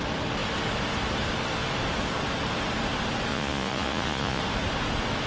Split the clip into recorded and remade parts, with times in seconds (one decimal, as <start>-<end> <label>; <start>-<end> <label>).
0.0-3.3 recorded; 3.3-4.4 remade; 4.4-5.3 recorded